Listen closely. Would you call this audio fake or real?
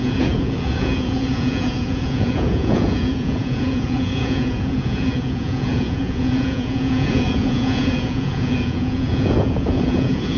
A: fake